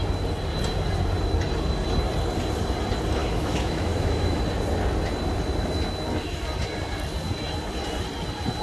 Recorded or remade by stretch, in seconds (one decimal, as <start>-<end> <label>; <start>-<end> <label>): 0.0-3.2 recorded; 3.2-4.4 remade; 4.4-8.6 recorded